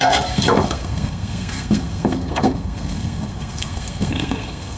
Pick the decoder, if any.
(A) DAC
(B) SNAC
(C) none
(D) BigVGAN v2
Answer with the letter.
B